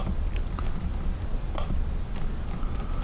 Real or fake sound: fake